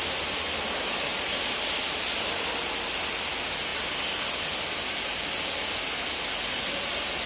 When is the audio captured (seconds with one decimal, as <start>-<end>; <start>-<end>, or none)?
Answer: 0.0-7.3